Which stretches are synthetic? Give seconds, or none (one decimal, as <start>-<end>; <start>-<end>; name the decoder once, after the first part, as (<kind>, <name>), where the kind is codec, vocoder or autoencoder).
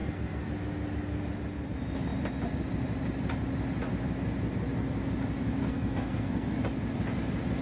0.0-0.5 (codec, SNAC); 5.6-6.6